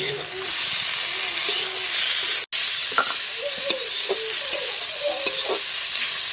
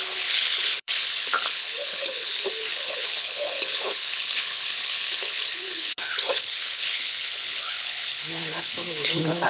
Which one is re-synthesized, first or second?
second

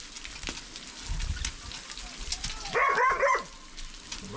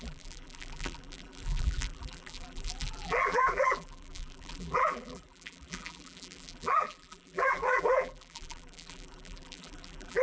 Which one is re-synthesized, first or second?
second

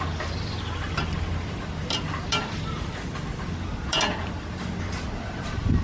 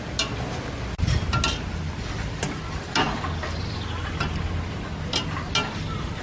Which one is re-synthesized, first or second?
first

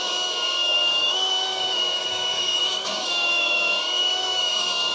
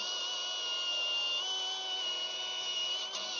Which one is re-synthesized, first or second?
first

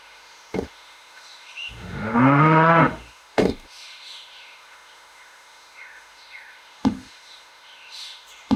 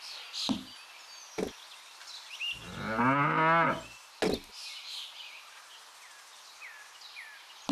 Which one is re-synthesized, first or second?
first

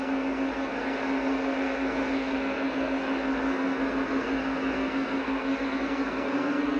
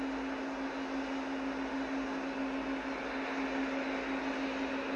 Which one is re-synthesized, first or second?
first